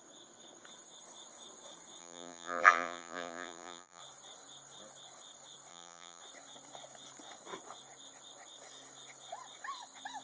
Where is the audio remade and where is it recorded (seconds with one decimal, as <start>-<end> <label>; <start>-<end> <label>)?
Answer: 0.0-2.0 recorded; 2.0-4.0 remade; 4.0-5.7 recorded; 5.7-6.2 remade; 6.2-10.2 recorded